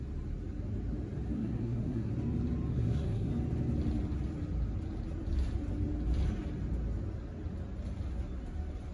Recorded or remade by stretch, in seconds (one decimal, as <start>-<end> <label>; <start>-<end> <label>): 0.0-1.4 recorded; 1.4-2.1 remade; 2.1-2.7 recorded; 2.7-3.3 remade; 3.3-8.9 recorded